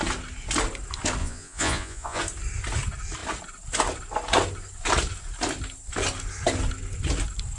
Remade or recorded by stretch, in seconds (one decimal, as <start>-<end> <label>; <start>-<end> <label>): 0.0-1.2 recorded; 1.2-2.2 remade; 2.2-7.6 recorded